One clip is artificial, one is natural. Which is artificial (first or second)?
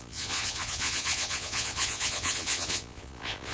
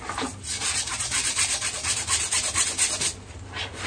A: first